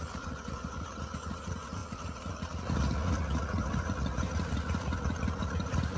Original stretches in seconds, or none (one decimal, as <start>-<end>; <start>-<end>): none